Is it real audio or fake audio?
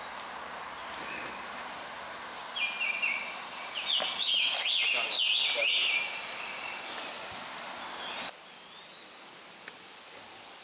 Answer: real